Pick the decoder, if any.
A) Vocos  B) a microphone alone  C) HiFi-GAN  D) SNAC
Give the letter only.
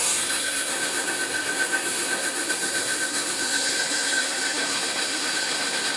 D